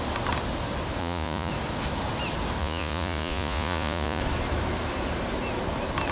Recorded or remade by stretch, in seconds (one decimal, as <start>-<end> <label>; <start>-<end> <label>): 0.0-1.0 recorded; 1.0-1.5 remade; 1.5-2.6 recorded; 2.6-4.2 remade; 4.2-6.1 recorded